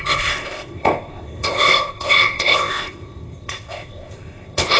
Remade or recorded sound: remade